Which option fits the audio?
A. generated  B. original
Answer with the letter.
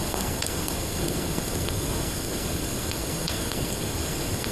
A